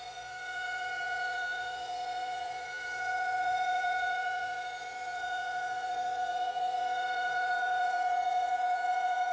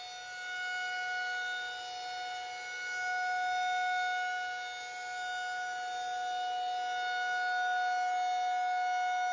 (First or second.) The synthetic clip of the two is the first